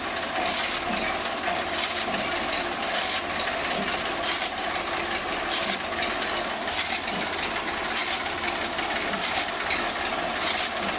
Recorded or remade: recorded